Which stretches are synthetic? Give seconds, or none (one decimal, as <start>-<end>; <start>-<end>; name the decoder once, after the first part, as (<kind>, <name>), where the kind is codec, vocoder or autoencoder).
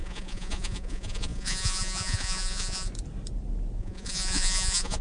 0.0-2.9 (vocoder, Vocos); 3.8-5.0